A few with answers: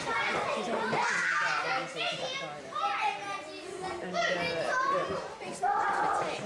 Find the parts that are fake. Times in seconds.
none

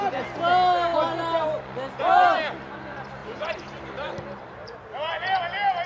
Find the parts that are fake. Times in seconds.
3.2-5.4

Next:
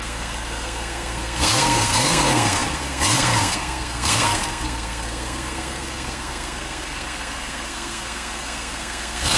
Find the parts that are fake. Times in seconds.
0.0-9.4

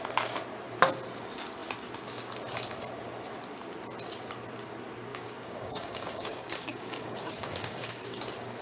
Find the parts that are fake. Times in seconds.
5.1-8.2

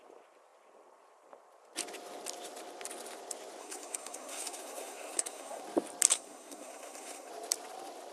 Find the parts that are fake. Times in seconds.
3.6-5.6; 6.1-7.3